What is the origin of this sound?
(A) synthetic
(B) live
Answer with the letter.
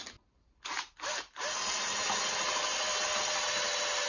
B